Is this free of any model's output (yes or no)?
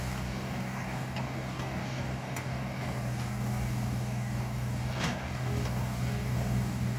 no